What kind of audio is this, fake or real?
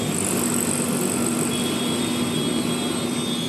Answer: real